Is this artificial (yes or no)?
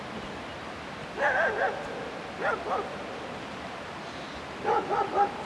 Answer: no